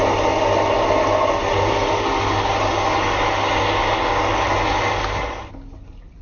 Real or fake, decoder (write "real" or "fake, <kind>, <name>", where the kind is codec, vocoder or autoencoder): real